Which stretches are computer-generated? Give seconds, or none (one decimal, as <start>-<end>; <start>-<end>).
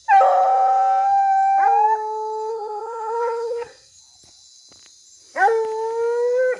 2.5-4.0